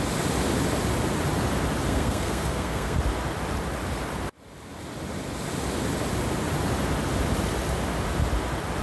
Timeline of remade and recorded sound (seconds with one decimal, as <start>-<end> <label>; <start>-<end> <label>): 0.0-1.9 recorded; 1.9-3.0 remade; 3.0-8.8 recorded